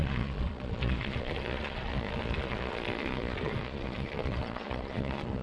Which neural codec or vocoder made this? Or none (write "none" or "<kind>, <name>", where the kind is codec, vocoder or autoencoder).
vocoder, Vocos